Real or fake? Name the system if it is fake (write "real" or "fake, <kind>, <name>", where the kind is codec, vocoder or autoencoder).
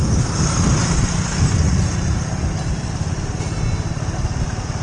real